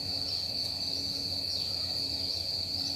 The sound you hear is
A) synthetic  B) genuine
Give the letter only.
B